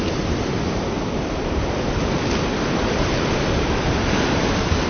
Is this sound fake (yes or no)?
no